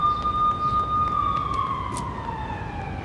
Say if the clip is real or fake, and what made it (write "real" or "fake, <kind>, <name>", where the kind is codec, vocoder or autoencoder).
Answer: real